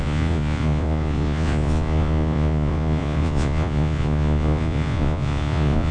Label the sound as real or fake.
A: fake